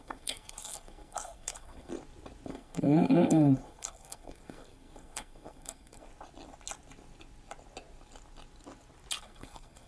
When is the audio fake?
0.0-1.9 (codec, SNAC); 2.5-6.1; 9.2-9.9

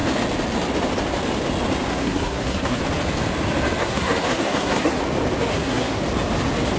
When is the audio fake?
1.9-2.8 (codec, SNAC); 3.8-5.0; 5.5-6.0